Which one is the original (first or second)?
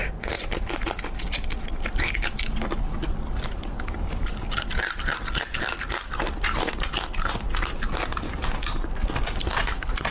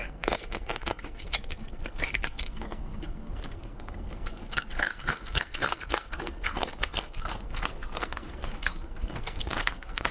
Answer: first